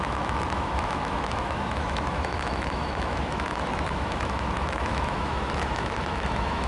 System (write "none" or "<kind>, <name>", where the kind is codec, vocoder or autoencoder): autoencoder, DAC-VAE